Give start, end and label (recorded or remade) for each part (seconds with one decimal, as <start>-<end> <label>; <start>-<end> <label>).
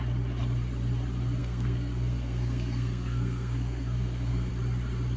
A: 0.0-1.4 recorded; 1.4-4.5 remade; 4.5-5.2 recorded